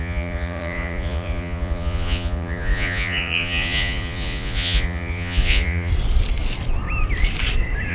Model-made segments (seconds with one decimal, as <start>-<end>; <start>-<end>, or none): 0.0-5.9